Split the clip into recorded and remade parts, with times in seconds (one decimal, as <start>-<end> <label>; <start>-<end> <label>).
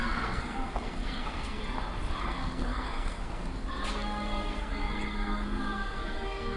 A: 0.0-1.6 remade; 1.6-2.2 recorded; 2.2-3.4 remade; 3.4-3.9 recorded; 3.9-6.6 remade